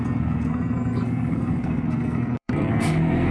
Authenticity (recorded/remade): remade